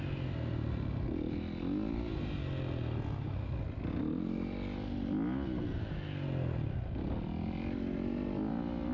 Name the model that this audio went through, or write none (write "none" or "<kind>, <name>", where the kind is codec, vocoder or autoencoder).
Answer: none